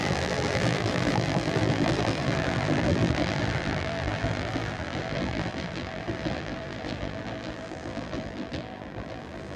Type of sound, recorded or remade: remade